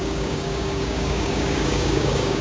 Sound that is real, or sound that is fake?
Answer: fake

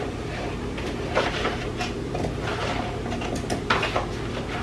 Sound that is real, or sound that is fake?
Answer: real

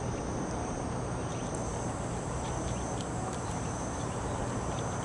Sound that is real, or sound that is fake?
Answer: fake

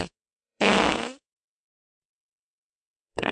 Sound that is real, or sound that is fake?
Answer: fake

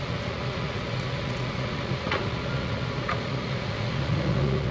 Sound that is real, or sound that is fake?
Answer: fake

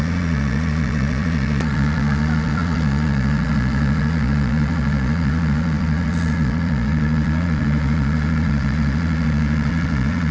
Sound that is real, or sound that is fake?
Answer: fake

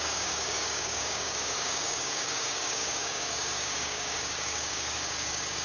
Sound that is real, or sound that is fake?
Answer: fake